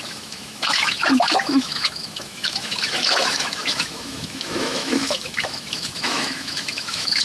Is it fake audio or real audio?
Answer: fake